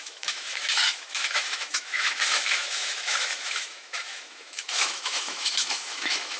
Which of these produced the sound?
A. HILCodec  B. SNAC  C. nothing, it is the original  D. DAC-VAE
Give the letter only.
D